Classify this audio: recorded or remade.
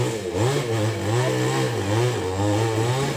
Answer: recorded